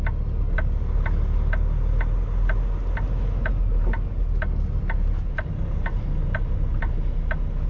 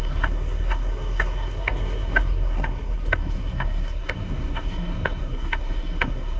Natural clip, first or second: first